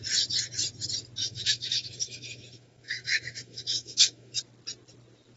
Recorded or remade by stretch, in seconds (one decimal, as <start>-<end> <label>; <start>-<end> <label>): 0.0-1.2 recorded; 1.2-4.4 remade; 4.4-5.4 recorded